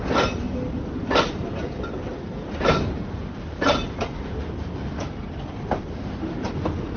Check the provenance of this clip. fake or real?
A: real